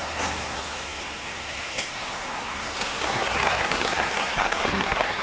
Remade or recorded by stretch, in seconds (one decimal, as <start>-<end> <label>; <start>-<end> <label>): 0.0-5.2 remade